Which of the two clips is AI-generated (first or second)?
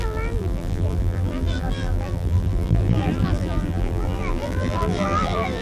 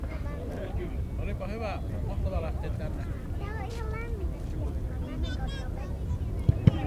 first